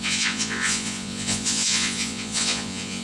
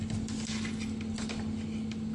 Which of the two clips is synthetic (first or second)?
first